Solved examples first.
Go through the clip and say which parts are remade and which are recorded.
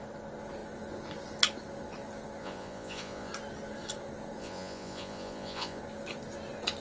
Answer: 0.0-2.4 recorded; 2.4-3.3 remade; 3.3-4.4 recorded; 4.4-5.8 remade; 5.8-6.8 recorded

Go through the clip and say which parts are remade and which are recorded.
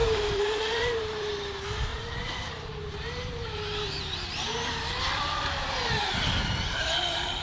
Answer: 0.0-1.3 remade; 1.3-1.9 recorded; 1.9-4.3 remade; 4.3-7.4 recorded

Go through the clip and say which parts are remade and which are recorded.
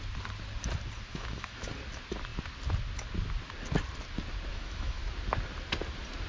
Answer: 0.0-1.1 recorded; 1.1-1.7 remade; 1.7-4.5 recorded; 4.5-5.0 remade; 5.0-6.3 recorded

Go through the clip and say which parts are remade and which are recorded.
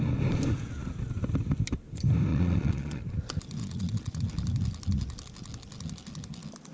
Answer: 0.0-2.3 recorded; 2.3-3.0 remade; 3.0-3.6 recorded; 3.6-4.2 remade; 4.2-6.7 recorded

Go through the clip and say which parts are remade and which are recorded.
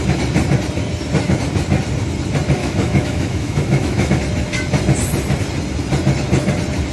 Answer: 0.0-2.6 recorded; 2.6-4.1 remade; 4.1-6.9 recorded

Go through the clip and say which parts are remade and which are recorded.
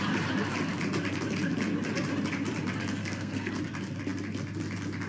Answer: 0.0-3.0 recorded; 3.0-3.6 remade; 3.6-5.1 recorded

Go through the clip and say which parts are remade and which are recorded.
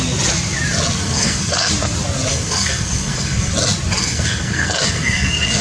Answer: 0.0-1.0 recorded; 1.0-1.7 remade; 1.7-2.3 recorded; 2.3-3.5 remade; 3.5-4.0 recorded; 4.0-5.6 remade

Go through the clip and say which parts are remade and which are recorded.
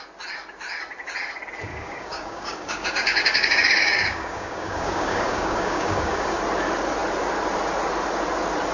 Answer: 0.0-1.7 recorded; 1.7-6.4 remade; 6.4-8.7 recorded